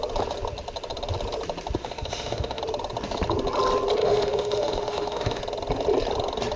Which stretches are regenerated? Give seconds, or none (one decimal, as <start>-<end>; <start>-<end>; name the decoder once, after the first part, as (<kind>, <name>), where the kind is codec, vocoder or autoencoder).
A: 1.8-2.6 (autoencoder, DAC-VAE); 4.0-5.4